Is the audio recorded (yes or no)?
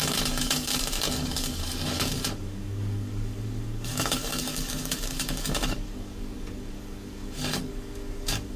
no